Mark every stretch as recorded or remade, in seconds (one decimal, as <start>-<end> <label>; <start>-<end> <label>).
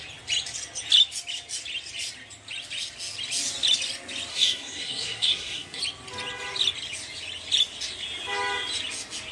0.0-4.3 recorded; 4.3-5.8 remade; 5.8-9.3 recorded